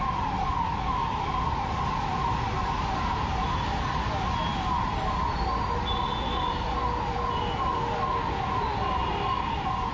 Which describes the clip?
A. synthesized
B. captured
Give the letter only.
B